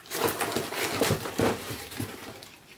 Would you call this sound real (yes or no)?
no